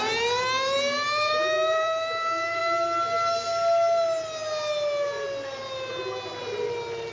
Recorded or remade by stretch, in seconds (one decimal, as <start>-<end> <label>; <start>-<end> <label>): 0.0-2.6 remade; 2.6-7.1 recorded